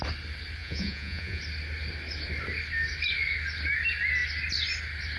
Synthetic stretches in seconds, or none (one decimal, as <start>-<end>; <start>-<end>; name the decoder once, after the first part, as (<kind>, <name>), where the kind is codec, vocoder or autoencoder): 0.6-1.4 (vocoder, Vocos)